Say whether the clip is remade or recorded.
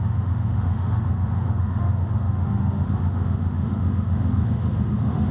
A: remade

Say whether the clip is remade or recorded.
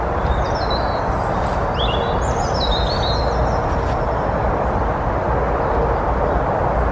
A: recorded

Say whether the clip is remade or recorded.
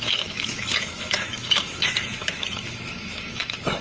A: remade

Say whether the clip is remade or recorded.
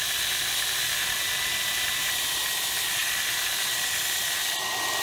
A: recorded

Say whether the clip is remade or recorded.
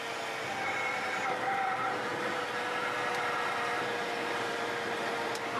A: recorded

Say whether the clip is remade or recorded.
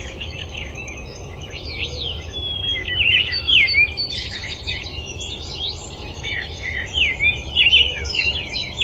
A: remade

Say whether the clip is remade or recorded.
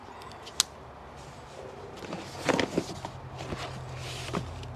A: recorded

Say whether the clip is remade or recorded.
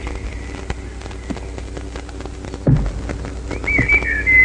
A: recorded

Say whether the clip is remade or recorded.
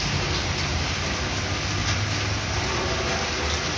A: recorded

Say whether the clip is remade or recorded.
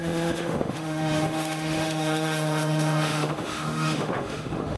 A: remade